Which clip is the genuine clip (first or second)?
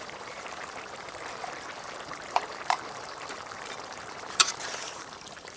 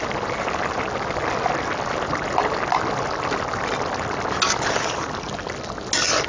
second